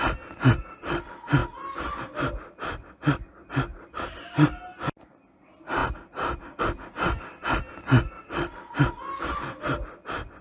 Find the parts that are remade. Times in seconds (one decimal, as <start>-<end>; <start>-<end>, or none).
none